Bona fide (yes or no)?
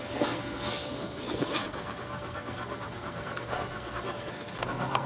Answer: no